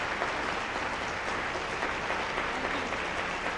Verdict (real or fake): real